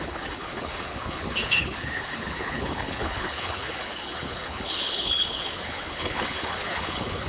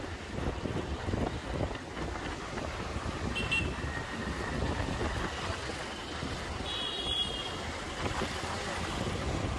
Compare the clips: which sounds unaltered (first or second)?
second